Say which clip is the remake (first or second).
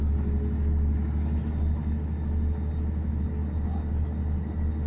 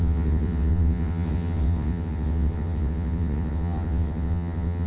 second